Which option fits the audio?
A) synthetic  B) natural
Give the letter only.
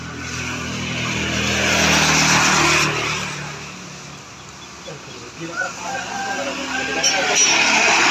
B